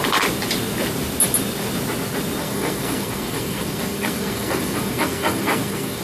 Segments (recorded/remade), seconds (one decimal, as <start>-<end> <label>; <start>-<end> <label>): 0.0-2.4 recorded; 2.4-6.0 remade